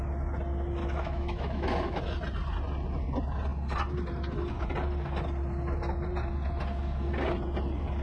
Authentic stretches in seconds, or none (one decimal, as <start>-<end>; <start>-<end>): 0.0-0.8; 2.0-8.0